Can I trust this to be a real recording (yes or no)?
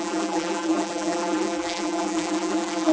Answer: no